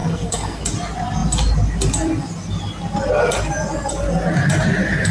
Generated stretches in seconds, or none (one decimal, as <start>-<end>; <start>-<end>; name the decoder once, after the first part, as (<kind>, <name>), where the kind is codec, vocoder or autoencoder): 0.0-0.6 (codec, SNAC)

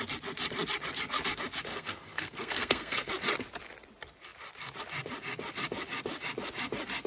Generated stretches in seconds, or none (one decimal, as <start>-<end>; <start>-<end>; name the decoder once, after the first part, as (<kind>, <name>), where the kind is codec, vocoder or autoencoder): 1.7-3.1 (codec, SNAC)

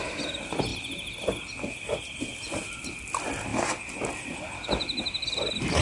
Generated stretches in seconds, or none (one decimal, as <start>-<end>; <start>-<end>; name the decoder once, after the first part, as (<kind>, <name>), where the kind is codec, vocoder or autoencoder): none